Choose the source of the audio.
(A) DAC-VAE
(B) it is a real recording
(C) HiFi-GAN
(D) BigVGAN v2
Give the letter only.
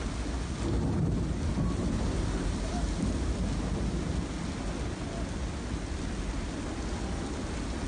B